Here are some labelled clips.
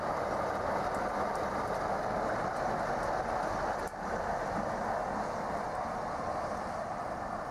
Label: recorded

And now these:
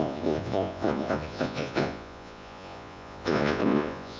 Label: remade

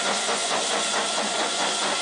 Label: remade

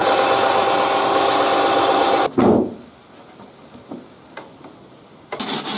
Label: recorded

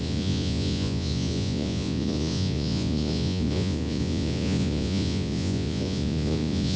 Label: remade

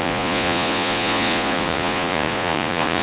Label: remade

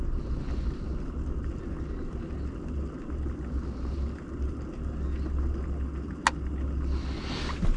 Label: recorded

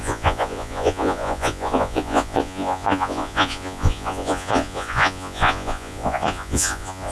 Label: remade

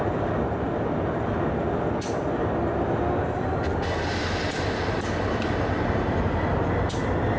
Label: recorded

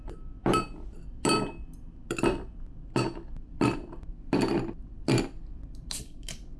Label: recorded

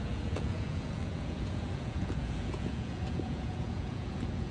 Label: remade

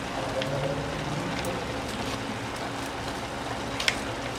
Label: recorded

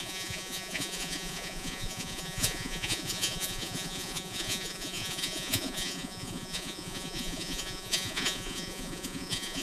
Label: remade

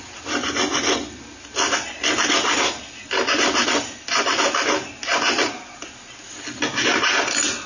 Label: recorded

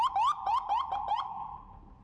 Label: recorded